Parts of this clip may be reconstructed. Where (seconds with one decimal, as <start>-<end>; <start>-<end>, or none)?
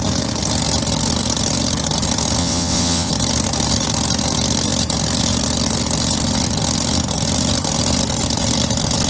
2.4-3.1